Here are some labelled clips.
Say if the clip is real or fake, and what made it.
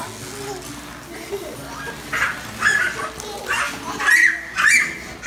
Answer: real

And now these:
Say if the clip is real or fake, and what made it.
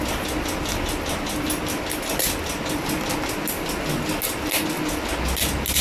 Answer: real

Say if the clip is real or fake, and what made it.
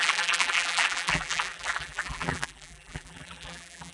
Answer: fake, vocoder, BigVGAN v2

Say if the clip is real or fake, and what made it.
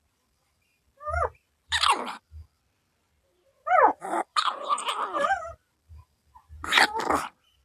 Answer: fake, vocoder, BigVGAN v2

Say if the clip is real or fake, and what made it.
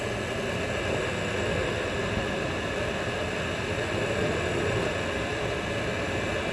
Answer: real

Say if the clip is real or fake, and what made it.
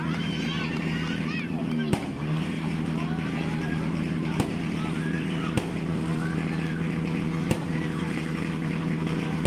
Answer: fake, vocoder, BigVGAN v2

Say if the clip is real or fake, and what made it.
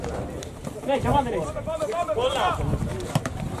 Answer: real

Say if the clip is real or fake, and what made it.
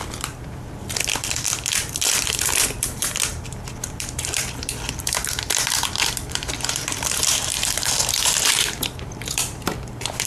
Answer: fake, vocoder, BigVGAN v2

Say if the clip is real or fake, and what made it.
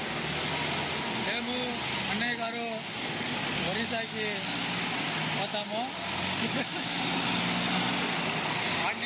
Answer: real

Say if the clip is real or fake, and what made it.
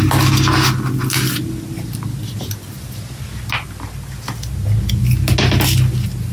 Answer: real